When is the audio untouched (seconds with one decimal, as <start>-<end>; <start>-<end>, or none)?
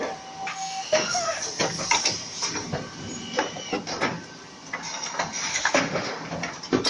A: 0.0-0.5; 1.4-5.5; 6.1-6.9